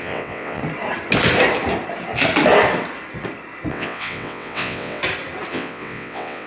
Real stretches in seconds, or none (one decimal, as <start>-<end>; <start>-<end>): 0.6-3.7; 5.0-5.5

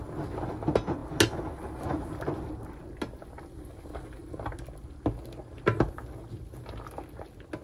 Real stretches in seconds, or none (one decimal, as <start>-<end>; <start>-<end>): 0.0-7.6

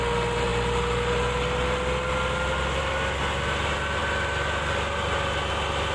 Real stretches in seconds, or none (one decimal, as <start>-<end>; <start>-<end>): 0.0-5.9